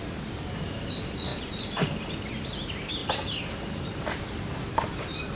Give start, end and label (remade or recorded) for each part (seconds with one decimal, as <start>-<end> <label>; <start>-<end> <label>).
0.0-1.3 recorded; 1.3-1.9 remade; 1.9-3.0 recorded; 3.0-4.2 remade; 4.2-5.4 recorded